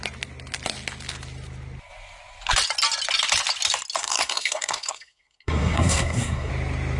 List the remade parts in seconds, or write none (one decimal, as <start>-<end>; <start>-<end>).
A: 4.0-6.5